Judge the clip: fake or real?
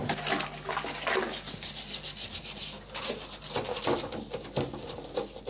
real